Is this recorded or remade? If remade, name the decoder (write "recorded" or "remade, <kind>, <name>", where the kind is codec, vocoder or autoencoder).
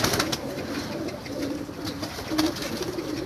recorded